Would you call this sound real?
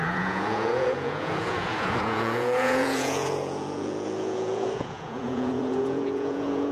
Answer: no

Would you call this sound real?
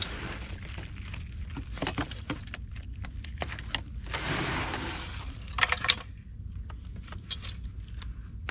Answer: yes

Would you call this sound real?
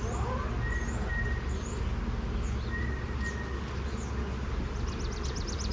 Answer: yes